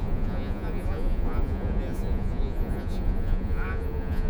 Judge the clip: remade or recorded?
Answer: remade